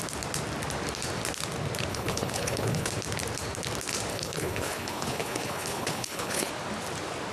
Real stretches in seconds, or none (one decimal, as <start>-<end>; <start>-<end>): 0.0-1.9; 2.9-4.1; 6.5-7.3

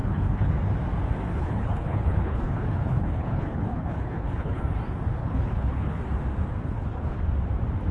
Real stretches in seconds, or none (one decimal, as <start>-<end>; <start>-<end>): 0.5-1.3; 4.6-5.2; 6.0-6.6; 7.2-7.9

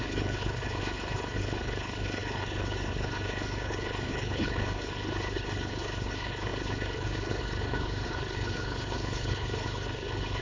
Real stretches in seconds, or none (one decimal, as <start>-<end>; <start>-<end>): none

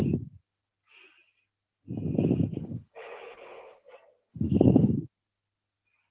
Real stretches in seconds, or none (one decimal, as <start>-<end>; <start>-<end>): 0.0-2.6; 3.9-4.3; 4.9-6.1

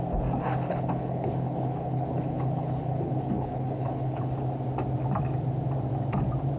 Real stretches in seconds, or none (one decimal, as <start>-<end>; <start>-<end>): 0.0-0.4; 4.3-6.6

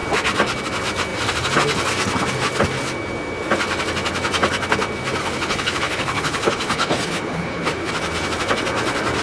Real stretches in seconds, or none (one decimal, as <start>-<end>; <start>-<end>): 0.0-5.2; 7.9-9.2

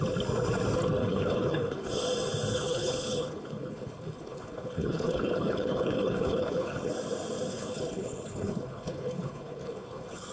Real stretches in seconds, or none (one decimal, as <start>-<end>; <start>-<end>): 0.0-1.0; 1.9-2.5; 6.9-7.5